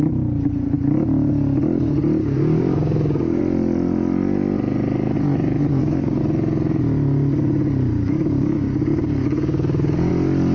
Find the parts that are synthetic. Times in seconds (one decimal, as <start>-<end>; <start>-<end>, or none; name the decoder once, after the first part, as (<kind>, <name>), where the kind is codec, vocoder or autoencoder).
2.2-3.4 (codec, DAC); 5.7-6.2; 7.9-10.1